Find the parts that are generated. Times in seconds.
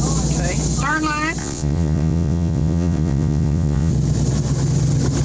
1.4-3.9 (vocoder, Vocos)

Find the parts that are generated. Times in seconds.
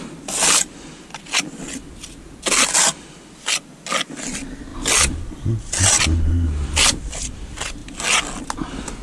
none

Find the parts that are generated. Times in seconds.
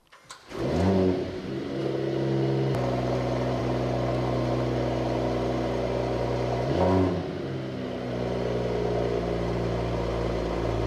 none